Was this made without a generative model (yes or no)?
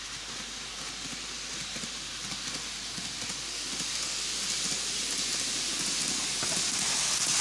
yes